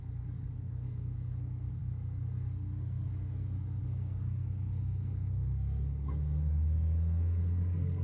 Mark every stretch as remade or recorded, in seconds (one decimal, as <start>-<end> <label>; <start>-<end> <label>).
0.0-8.0 remade